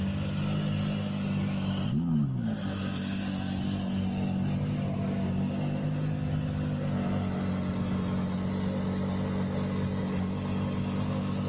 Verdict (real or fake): real